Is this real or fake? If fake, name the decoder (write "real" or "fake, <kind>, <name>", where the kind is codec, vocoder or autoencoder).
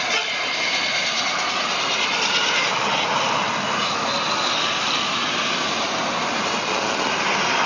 real